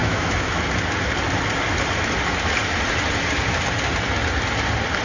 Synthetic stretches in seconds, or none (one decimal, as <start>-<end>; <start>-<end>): 0.0-0.6